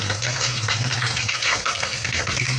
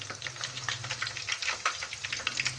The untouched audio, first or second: second